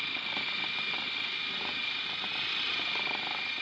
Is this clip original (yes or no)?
yes